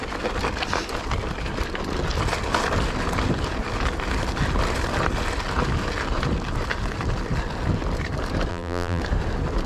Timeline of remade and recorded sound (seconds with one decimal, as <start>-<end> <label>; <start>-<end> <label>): 0.0-8.5 recorded; 8.5-9.0 remade; 9.0-9.7 recorded